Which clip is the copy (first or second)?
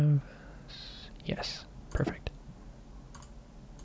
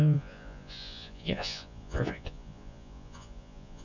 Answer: second